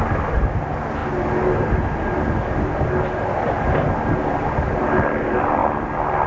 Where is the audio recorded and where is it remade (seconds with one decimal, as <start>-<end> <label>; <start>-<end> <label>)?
0.0-6.3 recorded

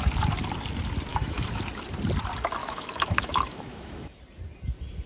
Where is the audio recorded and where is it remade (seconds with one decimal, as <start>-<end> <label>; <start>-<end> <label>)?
0.0-1.1 recorded; 1.1-1.6 remade; 1.6-2.6 recorded; 2.6-4.2 remade; 4.2-5.1 recorded

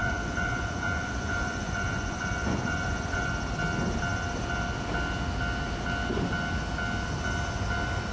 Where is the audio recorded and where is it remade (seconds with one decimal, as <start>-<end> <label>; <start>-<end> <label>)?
0.0-3.3 remade; 3.3-8.1 recorded

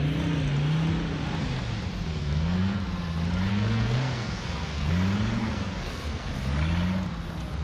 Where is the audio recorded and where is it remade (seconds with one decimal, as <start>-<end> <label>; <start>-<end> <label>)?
0.0-2.1 recorded; 2.1-2.8 remade; 2.8-3.5 recorded; 3.5-4.9 remade; 4.9-5.4 recorded; 5.4-6.3 remade; 6.3-7.6 recorded

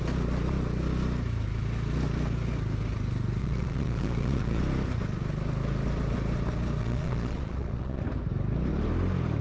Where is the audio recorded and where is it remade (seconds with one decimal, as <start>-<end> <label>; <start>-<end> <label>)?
0.0-3.4 recorded; 3.4-4.6 remade; 4.6-6.8 recorded; 6.8-8.0 remade; 8.0-9.4 recorded

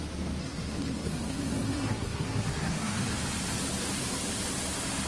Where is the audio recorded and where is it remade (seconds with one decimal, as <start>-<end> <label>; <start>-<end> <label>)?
0.0-0.4 recorded; 0.4-3.0 remade; 3.0-5.1 recorded

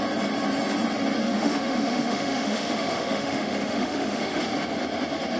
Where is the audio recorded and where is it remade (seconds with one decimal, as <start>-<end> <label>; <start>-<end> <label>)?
0.0-1.2 recorded; 1.2-4.4 remade; 4.4-5.4 recorded